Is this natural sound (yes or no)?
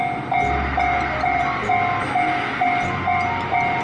yes